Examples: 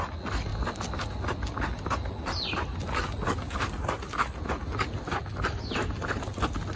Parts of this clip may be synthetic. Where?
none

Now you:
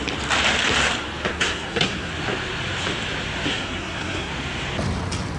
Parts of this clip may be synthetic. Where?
1.3-2.1; 3.5-4.3

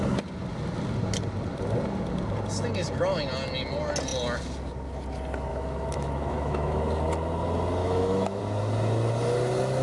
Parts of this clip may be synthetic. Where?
5.5-6.8; 7.8-8.4

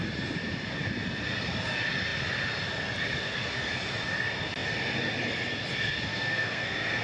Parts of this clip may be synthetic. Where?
6.1-7.0

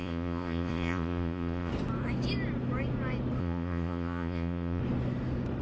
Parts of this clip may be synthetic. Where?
0.0-1.7; 3.4-4.8

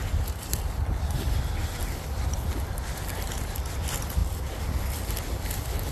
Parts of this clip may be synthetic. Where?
none